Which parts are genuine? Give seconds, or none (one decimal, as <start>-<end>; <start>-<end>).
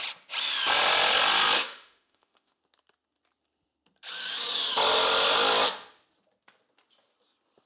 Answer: 0.0-1.6; 2.6-7.7